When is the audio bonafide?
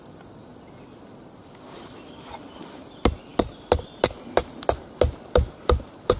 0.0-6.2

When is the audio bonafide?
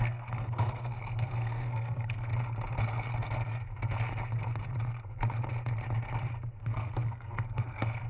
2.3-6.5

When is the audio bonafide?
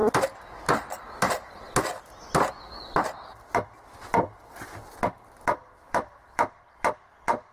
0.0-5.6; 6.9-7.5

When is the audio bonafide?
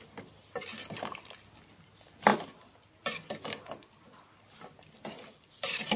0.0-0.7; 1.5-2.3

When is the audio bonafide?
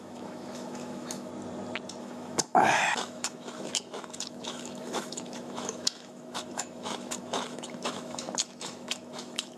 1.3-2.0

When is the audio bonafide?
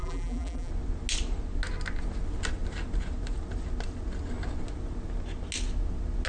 0.7-6.3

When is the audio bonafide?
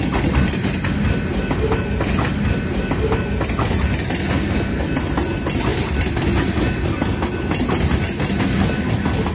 0.0-9.3